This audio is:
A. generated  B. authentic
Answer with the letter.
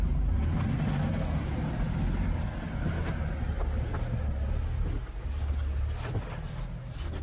B